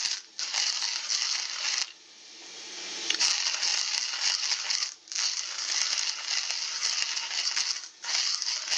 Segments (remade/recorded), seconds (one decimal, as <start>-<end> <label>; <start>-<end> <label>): 0.0-8.8 recorded